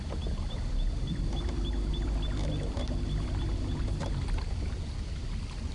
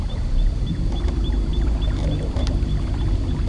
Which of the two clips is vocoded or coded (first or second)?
second